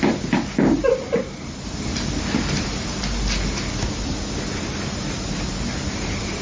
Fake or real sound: real